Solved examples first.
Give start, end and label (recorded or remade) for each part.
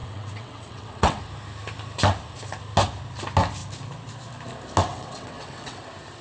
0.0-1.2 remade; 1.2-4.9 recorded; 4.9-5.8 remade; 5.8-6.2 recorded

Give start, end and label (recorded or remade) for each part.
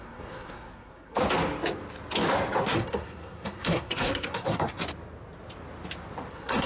0.0-1.2 remade; 1.2-2.6 recorded; 2.6-4.8 remade; 4.8-6.3 recorded; 6.3-6.7 remade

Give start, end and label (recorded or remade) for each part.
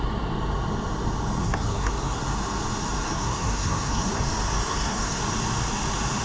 0.0-1.4 recorded; 1.4-2.2 remade; 2.2-3.0 recorded; 3.0-4.2 remade; 4.2-4.7 recorded; 4.7-5.2 remade; 5.2-6.2 recorded